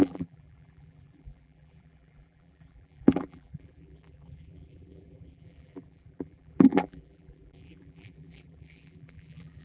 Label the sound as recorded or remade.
remade